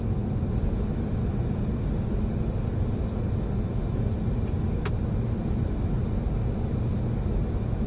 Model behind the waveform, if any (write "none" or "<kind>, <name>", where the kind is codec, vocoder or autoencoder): none